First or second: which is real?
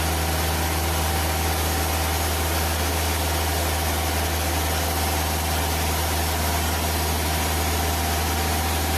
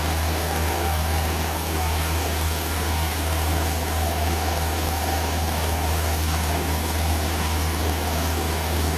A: first